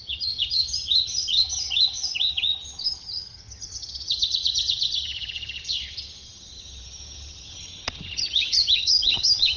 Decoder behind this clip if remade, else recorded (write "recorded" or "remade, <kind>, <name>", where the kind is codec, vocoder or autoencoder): remade, vocoder, HiFi-GAN